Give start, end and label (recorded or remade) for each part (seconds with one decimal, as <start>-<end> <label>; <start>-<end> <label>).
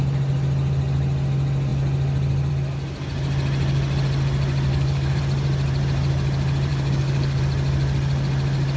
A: 0.0-4.7 recorded; 4.7-5.2 remade; 5.2-6.7 recorded; 6.7-7.4 remade; 7.4-8.8 recorded